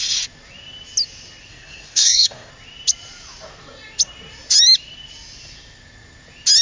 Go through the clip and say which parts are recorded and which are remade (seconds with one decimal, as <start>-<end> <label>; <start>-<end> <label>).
0.0-1.5 recorded; 1.5-2.5 remade; 2.5-6.6 recorded